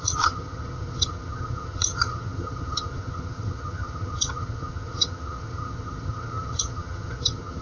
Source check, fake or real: fake